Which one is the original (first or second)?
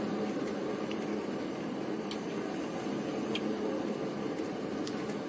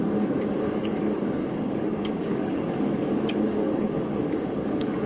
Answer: first